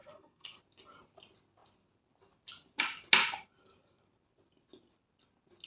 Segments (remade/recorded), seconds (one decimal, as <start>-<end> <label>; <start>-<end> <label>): 0.0-0.6 remade; 0.6-5.7 recorded